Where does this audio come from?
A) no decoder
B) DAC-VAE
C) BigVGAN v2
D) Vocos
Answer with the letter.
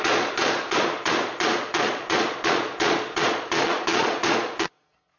D